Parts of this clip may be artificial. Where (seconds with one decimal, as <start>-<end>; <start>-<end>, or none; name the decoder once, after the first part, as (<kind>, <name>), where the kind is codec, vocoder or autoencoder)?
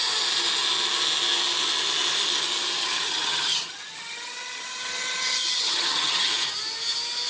2.8-6.3 (vocoder, HiFi-GAN)